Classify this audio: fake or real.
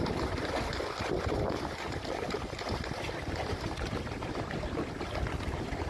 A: real